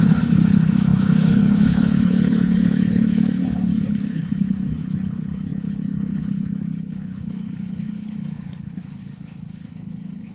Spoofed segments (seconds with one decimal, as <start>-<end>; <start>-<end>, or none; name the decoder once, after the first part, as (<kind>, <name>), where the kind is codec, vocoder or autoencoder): 0.0-10.3 (codec, HILCodec)